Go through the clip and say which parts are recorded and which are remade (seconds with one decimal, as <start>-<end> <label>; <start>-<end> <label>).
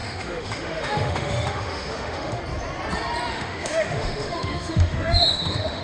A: 0.0-2.4 remade; 2.4-3.3 recorded; 3.3-5.8 remade